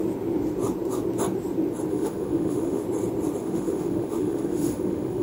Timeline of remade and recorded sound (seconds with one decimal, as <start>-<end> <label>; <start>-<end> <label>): 0.0-1.9 recorded; 1.9-2.8 remade; 2.8-3.4 recorded; 3.4-5.2 remade